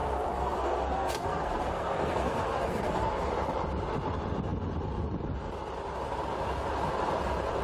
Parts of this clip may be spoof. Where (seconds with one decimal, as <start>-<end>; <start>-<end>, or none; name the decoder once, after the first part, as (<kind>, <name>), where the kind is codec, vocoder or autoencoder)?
0.0-3.3 (codec, SNAC)